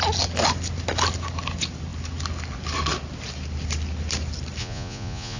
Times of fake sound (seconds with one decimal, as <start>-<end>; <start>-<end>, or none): 4.6-5.4